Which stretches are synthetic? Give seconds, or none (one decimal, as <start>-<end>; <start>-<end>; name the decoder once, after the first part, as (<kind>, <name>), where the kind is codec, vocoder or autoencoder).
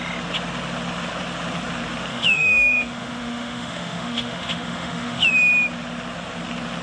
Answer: 2.1-5.3 (autoencoder, DAC-VAE)